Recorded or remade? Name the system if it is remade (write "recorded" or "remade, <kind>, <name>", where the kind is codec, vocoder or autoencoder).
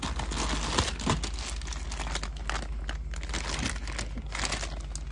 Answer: recorded